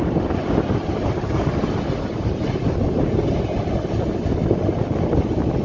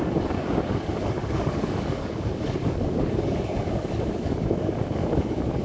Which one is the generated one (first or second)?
second